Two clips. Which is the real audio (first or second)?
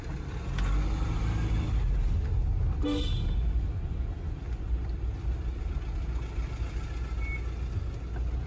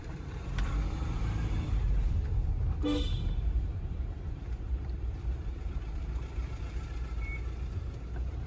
first